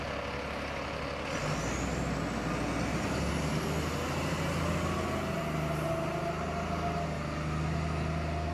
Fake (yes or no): no